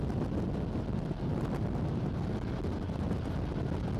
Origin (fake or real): real